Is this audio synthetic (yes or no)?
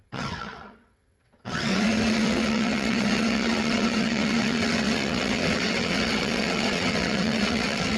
yes